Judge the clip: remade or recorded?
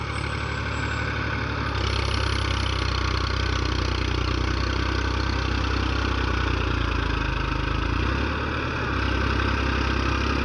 recorded